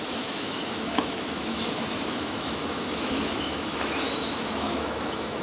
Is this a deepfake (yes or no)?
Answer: yes